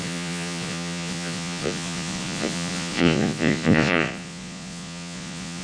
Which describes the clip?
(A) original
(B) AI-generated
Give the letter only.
B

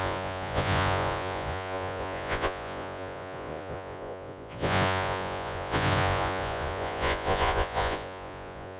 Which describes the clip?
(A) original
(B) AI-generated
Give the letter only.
B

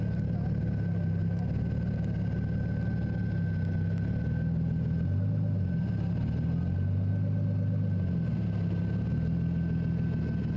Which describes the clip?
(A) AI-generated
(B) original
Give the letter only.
B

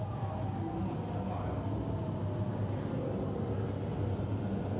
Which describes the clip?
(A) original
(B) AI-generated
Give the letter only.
A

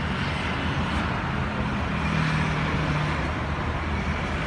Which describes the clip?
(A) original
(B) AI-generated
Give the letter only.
A